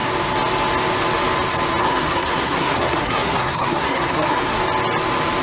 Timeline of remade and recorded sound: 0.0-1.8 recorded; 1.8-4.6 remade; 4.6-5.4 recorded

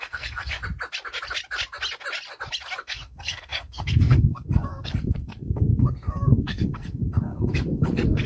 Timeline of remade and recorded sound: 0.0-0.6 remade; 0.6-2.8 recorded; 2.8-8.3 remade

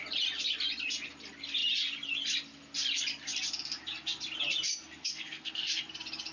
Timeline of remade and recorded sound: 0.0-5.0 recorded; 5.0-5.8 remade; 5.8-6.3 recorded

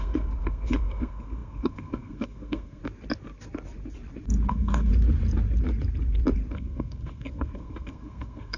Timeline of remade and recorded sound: 0.0-2.8 remade; 2.8-4.5 recorded; 4.5-4.9 remade; 4.9-6.5 recorded; 6.5-8.6 remade